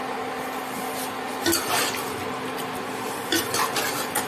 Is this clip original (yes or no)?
yes